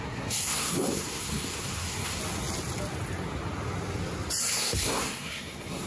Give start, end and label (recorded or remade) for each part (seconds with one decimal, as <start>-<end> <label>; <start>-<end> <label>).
0.0-2.2 remade; 2.2-4.4 recorded; 4.4-5.9 remade